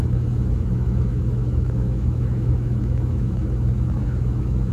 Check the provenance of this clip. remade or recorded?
remade